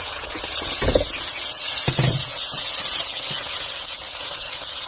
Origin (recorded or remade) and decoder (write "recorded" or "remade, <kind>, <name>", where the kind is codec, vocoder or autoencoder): remade, vocoder, Vocos